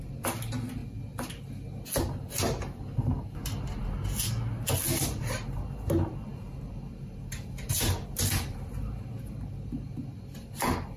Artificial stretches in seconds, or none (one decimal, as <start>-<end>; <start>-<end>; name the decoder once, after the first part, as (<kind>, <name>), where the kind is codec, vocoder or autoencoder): 0.8-1.4 (vocoder, BigVGAN v2)

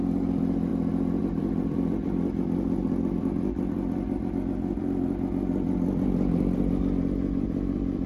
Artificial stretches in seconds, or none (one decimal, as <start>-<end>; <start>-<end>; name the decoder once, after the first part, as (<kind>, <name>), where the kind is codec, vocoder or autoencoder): 0.0-0.7 (vocoder, BigVGAN v2); 1.2-8.1

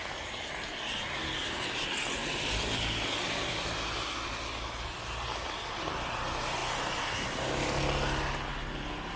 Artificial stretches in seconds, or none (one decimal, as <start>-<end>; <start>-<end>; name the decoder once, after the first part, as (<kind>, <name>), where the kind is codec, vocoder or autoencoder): 2.2-3.5 (vocoder, BigVGAN v2)

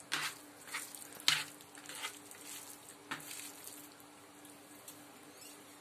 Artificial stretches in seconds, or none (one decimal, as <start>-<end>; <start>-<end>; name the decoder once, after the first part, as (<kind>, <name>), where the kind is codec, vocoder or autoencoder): none

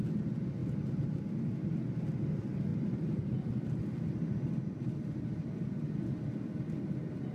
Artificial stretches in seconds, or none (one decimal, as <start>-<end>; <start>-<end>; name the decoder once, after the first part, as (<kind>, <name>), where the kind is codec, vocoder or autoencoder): 0.6-2.2 (vocoder, BigVGAN v2); 2.7-5.9

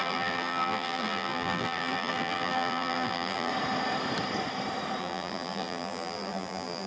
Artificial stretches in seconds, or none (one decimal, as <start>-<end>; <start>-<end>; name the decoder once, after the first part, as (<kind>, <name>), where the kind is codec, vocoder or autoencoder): 0.0-3.5 (vocoder, BigVGAN v2); 5.0-6.9